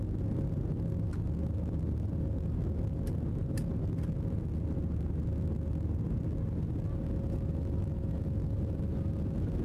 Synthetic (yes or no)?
no